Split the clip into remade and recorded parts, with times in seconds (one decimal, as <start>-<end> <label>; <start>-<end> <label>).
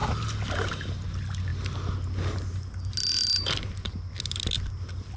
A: 0.0-5.2 recorded